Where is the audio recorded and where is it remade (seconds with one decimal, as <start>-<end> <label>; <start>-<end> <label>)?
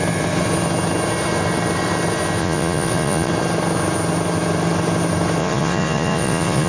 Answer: 0.0-2.4 recorded; 2.4-3.3 remade; 3.3-5.4 recorded; 5.4-6.7 remade